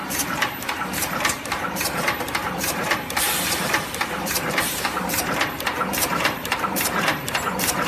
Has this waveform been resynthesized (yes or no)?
yes